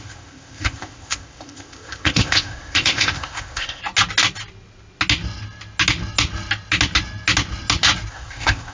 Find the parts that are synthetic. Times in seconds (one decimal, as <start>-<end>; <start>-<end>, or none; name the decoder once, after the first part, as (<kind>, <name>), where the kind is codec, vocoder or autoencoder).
0.0-3.8 (codec, ZipCodec); 8.1-8.7